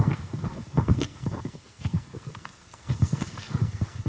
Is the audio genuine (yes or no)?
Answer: no